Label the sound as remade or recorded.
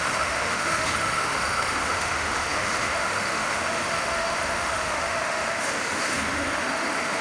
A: remade